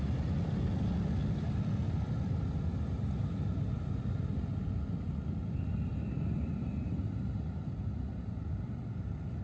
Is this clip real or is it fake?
real